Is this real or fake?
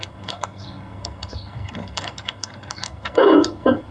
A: fake